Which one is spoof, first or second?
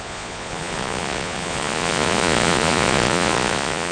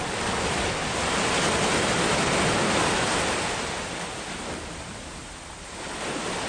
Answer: first